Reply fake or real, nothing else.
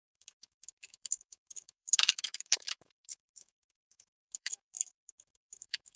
fake